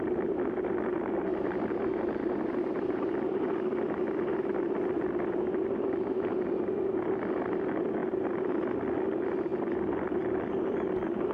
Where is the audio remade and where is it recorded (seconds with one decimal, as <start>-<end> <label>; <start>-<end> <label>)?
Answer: 0.0-1.3 recorded; 1.3-3.1 remade; 3.1-11.3 recorded